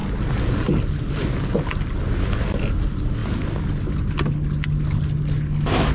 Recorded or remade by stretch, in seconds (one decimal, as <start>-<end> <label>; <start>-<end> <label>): 0.0-5.9 recorded